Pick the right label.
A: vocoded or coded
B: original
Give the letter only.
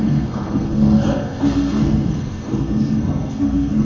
A